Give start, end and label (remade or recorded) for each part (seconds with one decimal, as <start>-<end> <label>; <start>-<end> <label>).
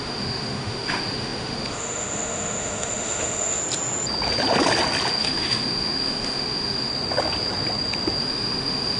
0.0-3.6 remade; 3.6-5.1 recorded; 5.1-6.9 remade; 6.9-8.2 recorded; 8.2-9.0 remade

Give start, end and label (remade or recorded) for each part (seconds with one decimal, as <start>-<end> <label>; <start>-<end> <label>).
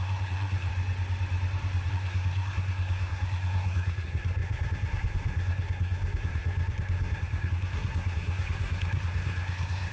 0.0-0.7 remade; 0.7-1.9 recorded; 1.9-9.9 remade